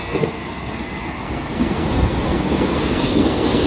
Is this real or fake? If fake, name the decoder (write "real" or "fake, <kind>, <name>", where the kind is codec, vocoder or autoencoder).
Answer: fake, codec, SNAC